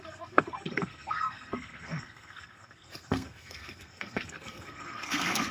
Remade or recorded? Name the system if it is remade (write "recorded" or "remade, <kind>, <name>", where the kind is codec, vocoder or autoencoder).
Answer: remade, codec, SNAC